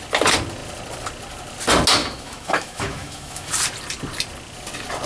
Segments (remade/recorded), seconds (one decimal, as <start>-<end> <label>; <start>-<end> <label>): 0.0-2.0 recorded; 2.0-3.5 remade; 3.5-5.1 recorded